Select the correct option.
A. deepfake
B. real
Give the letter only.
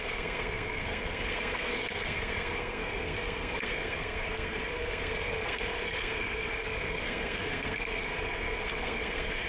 A